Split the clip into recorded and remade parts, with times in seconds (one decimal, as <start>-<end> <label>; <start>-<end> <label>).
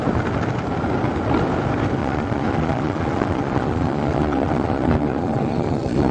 0.0-2.0 recorded; 2.0-6.1 remade